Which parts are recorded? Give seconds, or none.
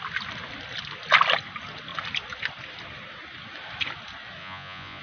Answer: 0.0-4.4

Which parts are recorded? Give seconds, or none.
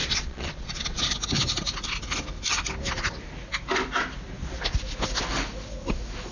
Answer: 1.0-6.3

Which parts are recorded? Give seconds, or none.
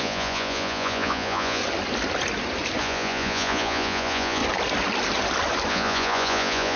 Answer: 1.6-2.8; 4.4-5.7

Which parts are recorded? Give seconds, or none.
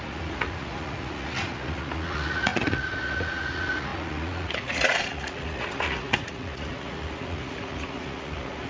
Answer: none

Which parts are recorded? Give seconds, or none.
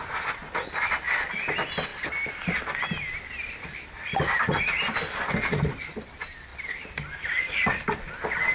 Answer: 0.0-8.5